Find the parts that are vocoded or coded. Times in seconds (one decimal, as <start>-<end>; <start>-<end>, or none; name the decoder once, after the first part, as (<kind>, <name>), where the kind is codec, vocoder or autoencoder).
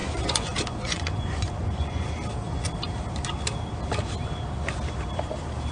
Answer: 0.0-2.1 (vocoder, Vocos)